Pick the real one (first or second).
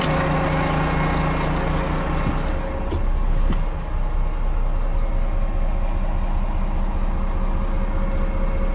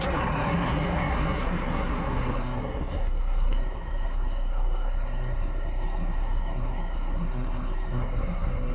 first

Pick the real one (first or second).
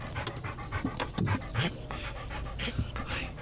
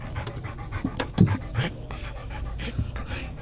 first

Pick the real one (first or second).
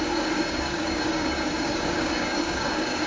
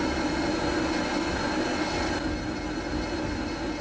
second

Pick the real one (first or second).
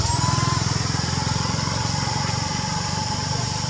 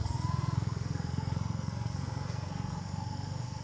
first